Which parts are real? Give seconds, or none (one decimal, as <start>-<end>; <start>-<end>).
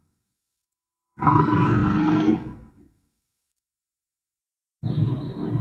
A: 4.4-5.6